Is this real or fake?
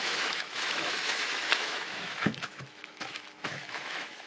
fake